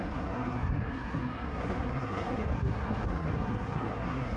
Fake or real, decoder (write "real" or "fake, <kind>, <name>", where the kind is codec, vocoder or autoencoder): fake, codec, SNAC